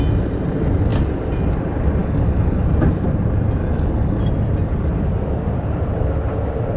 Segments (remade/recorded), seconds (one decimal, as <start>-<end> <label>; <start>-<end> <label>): 0.0-2.0 recorded; 2.0-2.6 remade; 2.6-3.6 recorded; 3.6-4.2 remade; 4.2-6.8 recorded